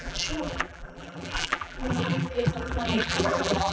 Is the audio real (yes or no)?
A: no